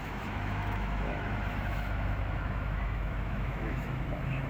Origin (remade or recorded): remade